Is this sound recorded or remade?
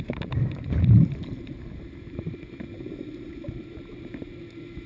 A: remade